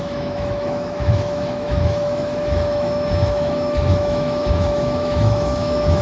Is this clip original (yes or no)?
no